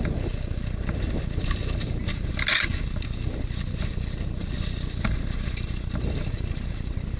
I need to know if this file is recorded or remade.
recorded